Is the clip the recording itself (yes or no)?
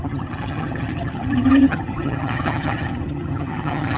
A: no